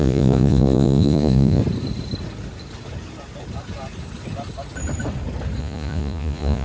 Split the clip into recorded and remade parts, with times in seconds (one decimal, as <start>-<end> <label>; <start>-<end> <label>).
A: 0.0-1.6 remade; 1.6-5.6 recorded; 5.6-6.6 remade